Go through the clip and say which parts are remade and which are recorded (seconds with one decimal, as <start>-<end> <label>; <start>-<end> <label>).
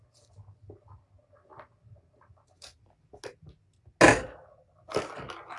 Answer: 0.0-5.6 recorded